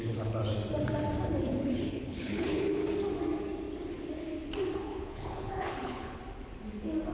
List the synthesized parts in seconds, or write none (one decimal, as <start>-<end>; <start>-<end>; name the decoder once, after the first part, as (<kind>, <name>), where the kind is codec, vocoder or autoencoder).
0.0-0.4 (codec, HILCodec); 1.4-2.8; 4.7-6.2